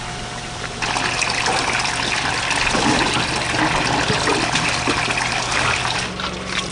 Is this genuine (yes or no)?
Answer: yes